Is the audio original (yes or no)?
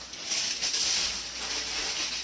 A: yes